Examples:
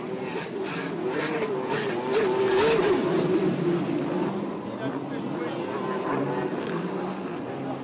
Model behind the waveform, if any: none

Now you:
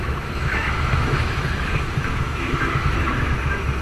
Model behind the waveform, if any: autoencoder, DAC-VAE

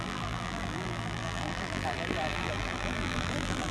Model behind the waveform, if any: vocoder, BigVGAN v2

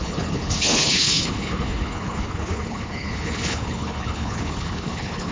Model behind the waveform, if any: codec, HILCodec